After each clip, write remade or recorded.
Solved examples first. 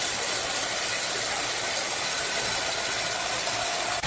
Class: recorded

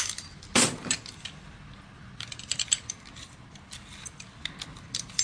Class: recorded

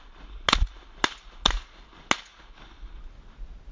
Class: recorded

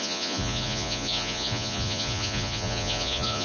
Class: remade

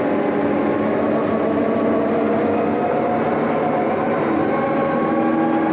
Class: recorded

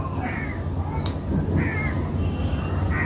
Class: recorded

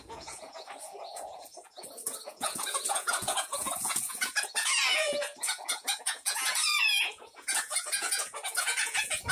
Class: remade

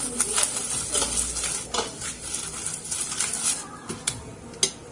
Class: recorded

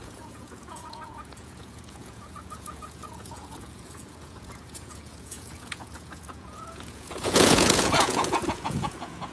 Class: remade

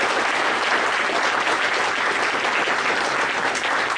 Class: recorded